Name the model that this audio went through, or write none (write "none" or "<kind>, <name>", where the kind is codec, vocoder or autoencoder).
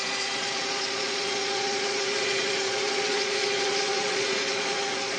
vocoder, Vocos